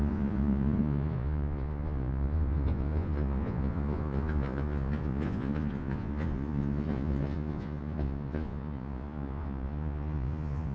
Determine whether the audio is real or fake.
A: fake